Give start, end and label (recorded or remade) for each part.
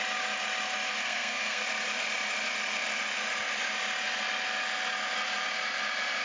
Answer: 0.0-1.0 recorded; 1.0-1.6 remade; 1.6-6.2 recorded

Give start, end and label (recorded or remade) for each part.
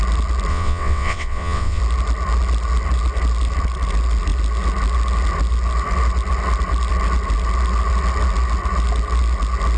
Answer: 0.0-0.5 recorded; 0.5-1.8 remade; 1.8-9.8 recorded